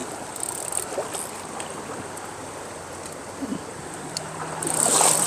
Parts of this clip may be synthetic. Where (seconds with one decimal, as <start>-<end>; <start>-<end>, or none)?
3.7-4.5